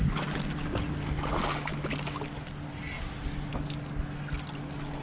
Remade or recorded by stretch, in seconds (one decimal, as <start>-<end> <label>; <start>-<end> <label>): 0.0-5.0 recorded